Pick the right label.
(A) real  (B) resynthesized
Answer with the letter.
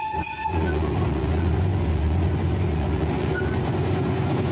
B